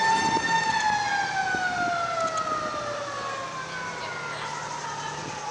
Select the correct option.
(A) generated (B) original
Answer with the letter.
B